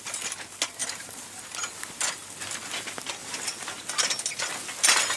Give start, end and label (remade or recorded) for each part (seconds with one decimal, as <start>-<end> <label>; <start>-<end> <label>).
0.0-0.8 recorded; 0.8-1.4 remade; 1.4-3.2 recorded; 3.2-4.1 remade; 4.1-5.2 recorded